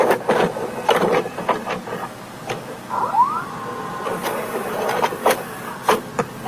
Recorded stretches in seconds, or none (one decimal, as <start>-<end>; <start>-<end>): 0.0-2.0; 3.5-4.1; 4.7-5.2; 6.1-6.5